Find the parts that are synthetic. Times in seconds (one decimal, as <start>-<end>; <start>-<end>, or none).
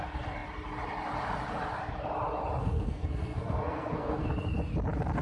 2.6-4.3